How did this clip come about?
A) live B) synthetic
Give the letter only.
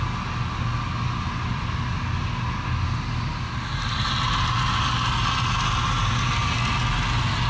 A